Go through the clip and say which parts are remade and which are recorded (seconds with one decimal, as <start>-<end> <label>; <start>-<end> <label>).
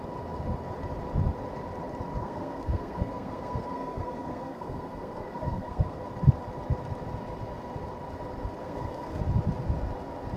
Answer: 0.0-2.1 recorded; 2.1-6.0 remade; 6.0-8.6 recorded; 8.6-9.2 remade; 9.2-10.4 recorded